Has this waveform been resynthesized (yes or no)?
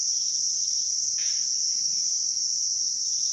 no